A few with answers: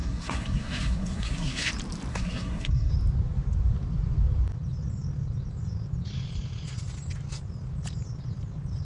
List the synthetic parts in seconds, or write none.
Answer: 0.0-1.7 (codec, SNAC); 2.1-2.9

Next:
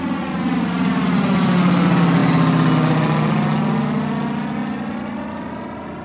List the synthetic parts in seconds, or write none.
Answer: none

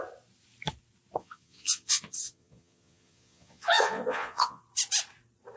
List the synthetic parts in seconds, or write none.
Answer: 1.2-4.6 (vocoder, Vocos)